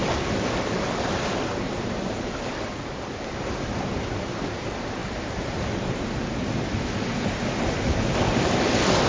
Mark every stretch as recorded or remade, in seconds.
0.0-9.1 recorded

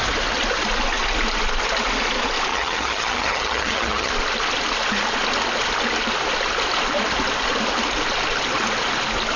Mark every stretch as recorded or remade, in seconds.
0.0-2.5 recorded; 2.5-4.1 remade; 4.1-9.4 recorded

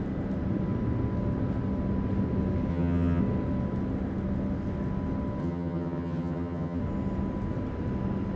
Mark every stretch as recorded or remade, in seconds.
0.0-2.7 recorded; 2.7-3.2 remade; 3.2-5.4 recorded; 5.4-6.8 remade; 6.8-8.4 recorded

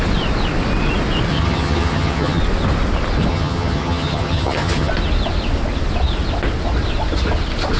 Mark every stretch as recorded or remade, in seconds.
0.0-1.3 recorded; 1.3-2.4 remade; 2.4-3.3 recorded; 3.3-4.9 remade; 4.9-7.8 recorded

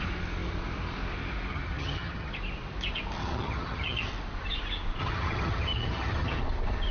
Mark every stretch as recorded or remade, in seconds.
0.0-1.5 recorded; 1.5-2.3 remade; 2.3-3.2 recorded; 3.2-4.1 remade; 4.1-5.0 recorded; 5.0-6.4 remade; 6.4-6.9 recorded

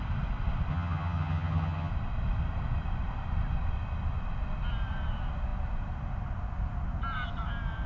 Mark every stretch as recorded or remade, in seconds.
0.0-0.7 recorded; 0.7-1.9 remade; 1.9-7.9 recorded

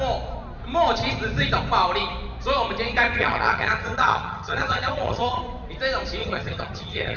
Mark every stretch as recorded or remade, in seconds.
0.0-3.1 recorded; 3.1-5.4 remade; 5.4-6.2 recorded; 6.2-7.2 remade